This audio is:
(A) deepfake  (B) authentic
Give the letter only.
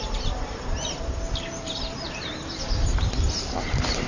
B